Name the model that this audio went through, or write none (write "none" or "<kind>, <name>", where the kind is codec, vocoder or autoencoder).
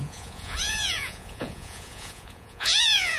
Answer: vocoder, Vocos